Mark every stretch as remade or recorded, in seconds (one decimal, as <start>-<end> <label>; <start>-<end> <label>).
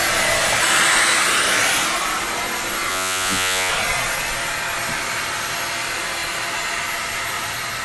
0.0-2.9 recorded; 2.9-3.7 remade; 3.7-7.8 recorded